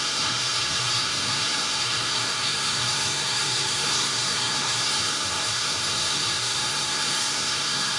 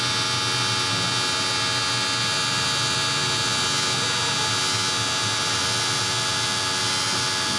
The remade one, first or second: first